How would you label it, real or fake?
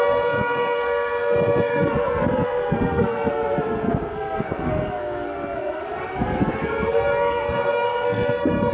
fake